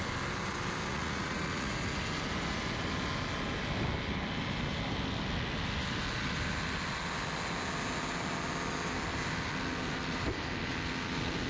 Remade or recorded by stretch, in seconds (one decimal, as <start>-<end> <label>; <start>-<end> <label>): 0.0-0.9 recorded; 0.9-1.7 remade; 1.7-11.5 recorded